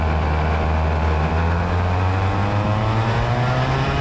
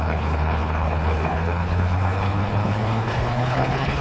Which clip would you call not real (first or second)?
second